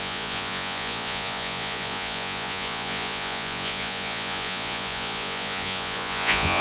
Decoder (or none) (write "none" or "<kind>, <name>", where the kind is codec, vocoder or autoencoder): vocoder, Vocos